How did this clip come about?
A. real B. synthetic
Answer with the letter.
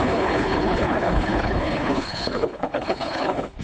B